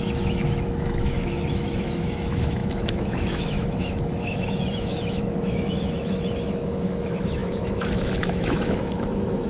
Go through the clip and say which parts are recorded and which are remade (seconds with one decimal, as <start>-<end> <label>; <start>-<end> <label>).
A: 0.0-9.5 remade